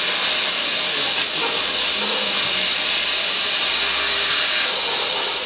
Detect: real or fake real